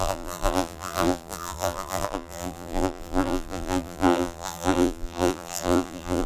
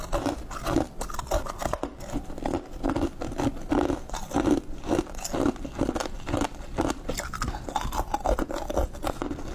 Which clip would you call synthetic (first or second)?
first